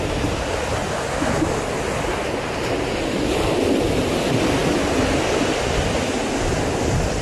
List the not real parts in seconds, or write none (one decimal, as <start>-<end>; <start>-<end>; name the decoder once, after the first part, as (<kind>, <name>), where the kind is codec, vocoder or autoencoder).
none

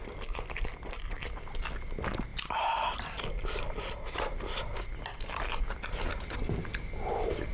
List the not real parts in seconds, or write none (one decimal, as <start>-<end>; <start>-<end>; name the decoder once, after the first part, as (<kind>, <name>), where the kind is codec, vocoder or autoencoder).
2.3-6.1 (vocoder, BigVGAN v2)

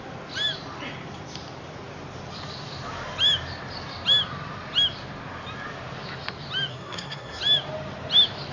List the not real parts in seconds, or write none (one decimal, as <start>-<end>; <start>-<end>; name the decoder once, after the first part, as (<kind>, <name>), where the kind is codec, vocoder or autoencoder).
6.7-7.4 (codec, SNAC)

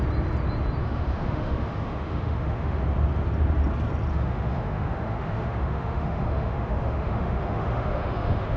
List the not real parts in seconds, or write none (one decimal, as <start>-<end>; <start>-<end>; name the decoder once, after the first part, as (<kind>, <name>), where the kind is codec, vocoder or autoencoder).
0.8-2.8 (autoencoder, DAC-VAE); 4.1-8.6

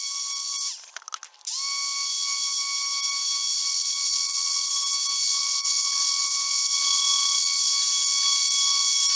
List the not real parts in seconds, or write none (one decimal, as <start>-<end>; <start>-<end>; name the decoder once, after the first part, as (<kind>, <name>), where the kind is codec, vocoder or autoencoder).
3.6-4.7 (vocoder, WaveNeXt); 5.4-7.6